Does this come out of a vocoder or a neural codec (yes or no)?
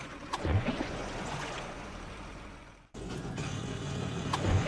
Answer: yes